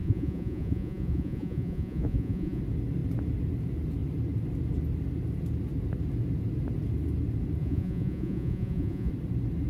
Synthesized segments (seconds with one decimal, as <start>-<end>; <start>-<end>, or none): 0.0-2.6; 7.6-9.1